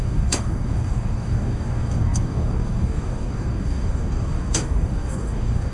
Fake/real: fake